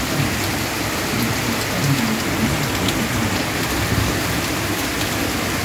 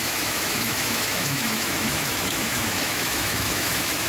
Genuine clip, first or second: first